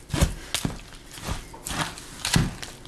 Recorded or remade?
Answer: recorded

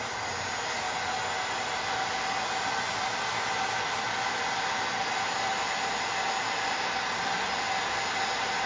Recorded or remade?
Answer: recorded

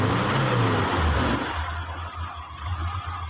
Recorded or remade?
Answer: recorded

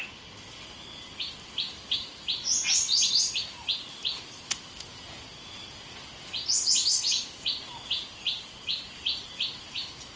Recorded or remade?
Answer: recorded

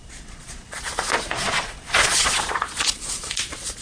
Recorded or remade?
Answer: remade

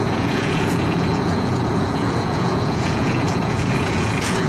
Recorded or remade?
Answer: remade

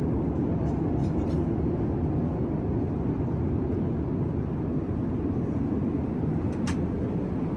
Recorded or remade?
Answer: recorded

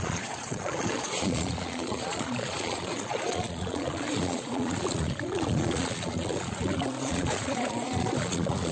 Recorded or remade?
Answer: remade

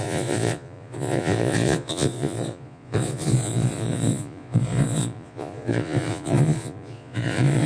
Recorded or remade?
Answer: remade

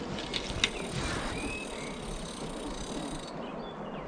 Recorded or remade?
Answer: recorded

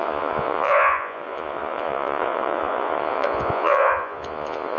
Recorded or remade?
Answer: remade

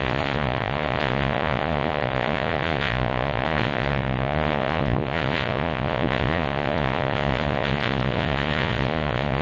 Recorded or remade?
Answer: remade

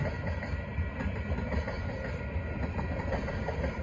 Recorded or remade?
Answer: recorded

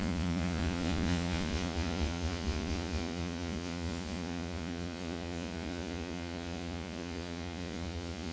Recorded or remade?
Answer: remade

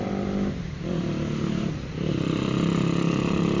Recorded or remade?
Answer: recorded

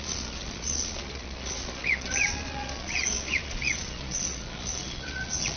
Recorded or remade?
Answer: remade